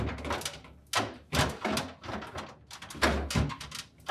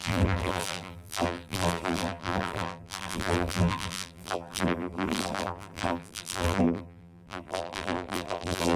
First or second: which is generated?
second